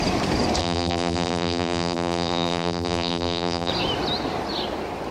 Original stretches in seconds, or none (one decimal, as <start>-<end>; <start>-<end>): 0.0-0.6; 3.7-5.1